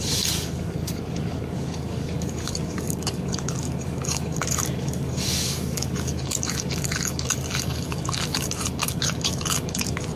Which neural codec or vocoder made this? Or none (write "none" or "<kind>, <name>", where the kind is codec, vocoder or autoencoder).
codec, DAC